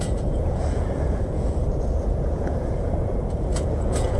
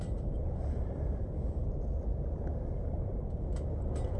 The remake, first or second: first